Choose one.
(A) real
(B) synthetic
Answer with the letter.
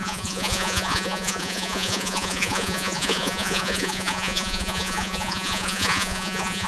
B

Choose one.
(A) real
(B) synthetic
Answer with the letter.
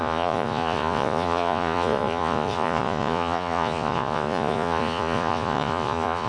B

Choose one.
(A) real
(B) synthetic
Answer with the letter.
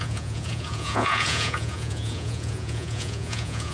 B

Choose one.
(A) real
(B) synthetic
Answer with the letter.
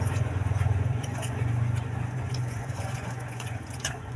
B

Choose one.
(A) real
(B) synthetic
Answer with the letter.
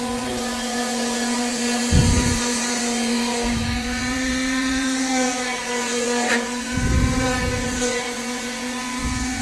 B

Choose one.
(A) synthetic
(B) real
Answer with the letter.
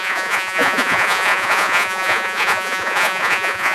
A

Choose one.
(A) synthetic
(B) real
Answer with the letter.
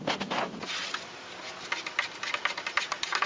B